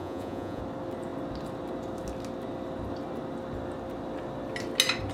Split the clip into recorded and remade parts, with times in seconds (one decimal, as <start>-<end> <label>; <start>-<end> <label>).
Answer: 0.0-0.6 remade; 0.6-5.1 recorded